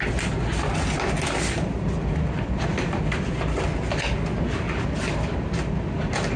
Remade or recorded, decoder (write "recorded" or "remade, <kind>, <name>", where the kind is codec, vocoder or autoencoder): recorded